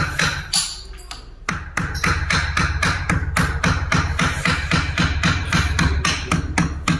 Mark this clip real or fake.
real